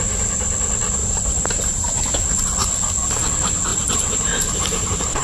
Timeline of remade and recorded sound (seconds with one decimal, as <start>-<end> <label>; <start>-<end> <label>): 0.0-1.0 recorded; 1.0-2.0 remade; 2.0-3.7 recorded; 3.7-5.2 remade